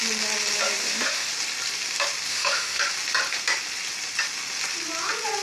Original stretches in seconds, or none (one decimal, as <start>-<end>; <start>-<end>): 0.0-0.8; 1.3-2.3; 2.8-5.4

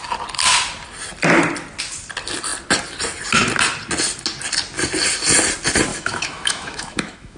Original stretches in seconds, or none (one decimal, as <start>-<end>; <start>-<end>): 0.0-5.9

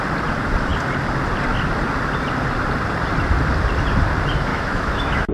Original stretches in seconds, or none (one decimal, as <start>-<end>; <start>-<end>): 0.0-4.5

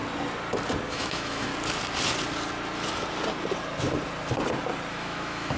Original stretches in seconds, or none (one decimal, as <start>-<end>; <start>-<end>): 0.0-0.9; 1.5-4.9

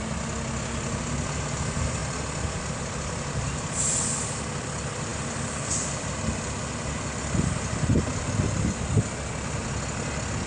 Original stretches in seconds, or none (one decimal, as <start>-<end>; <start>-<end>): 0.0-10.5

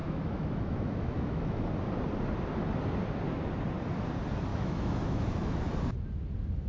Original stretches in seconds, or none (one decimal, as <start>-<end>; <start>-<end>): 1.7-4.5; 5.7-6.7

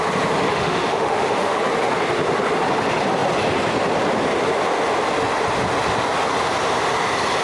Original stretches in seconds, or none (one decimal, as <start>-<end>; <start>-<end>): 0.0-0.5; 1.6-7.4

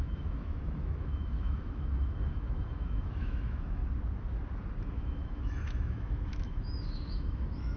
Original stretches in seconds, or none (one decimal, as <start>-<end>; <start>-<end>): 3.8-4.9